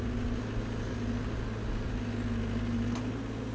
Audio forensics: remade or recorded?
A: recorded